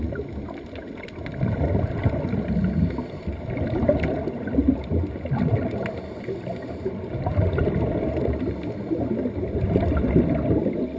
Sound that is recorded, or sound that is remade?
recorded